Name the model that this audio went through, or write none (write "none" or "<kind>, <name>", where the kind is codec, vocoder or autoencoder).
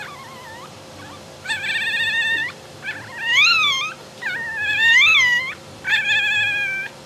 vocoder, BigVGAN v2